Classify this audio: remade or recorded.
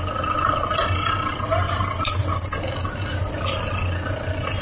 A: recorded